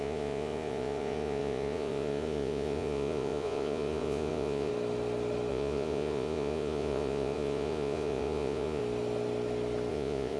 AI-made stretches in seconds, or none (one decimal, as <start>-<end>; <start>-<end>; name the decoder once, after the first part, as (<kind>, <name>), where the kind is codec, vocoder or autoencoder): 0.0-4.7 (vocoder, Vocos); 5.5-8.8; 9.9-10.4